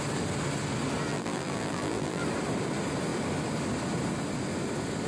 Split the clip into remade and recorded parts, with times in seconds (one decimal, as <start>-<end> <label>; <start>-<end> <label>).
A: 0.0-1.1 recorded; 1.1-2.2 remade; 2.2-5.1 recorded